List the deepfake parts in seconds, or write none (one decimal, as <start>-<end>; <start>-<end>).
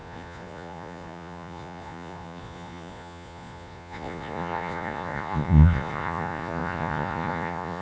0.0-7.8